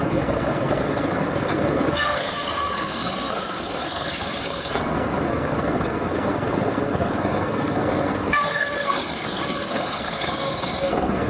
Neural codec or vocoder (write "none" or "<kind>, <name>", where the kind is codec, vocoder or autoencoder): codec, SNAC